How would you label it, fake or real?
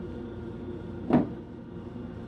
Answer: real